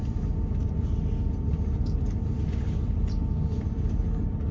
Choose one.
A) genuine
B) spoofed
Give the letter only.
A